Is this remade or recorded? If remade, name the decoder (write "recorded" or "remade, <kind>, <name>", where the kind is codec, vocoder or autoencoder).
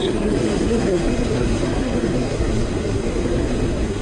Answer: remade, codec, SNAC